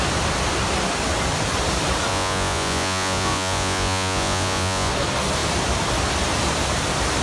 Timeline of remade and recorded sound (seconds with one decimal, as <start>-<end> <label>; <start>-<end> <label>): 0.0-2.1 recorded; 2.1-4.9 remade; 4.9-7.2 recorded